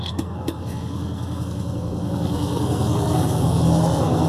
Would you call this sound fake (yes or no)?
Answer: yes